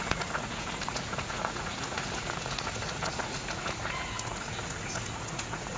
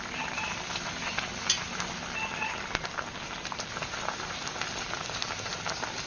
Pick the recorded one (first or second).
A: second